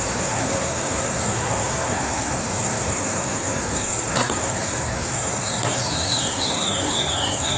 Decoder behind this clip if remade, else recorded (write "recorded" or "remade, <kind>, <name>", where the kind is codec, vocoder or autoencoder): remade, codec, SNAC